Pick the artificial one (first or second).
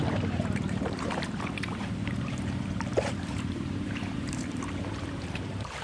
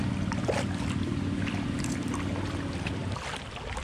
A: first